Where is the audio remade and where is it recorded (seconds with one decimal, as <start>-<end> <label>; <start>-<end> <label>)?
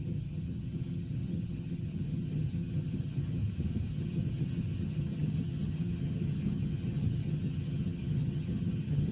0.0-3.4 remade; 3.4-3.9 recorded; 3.9-9.1 remade